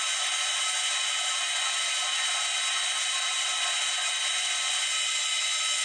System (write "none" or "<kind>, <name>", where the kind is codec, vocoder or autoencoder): none